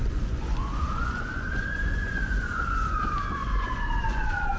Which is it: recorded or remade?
remade